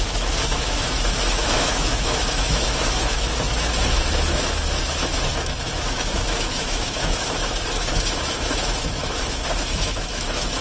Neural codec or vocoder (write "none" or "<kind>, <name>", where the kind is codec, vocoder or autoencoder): autoencoder, DAC-VAE